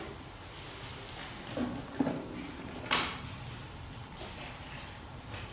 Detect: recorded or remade recorded